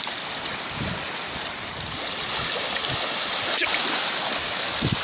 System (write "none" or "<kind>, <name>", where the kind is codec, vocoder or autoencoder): none